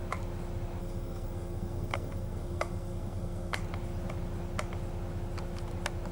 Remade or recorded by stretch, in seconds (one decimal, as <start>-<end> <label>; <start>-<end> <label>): 0.0-0.8 recorded; 0.8-3.6 remade; 3.6-6.1 recorded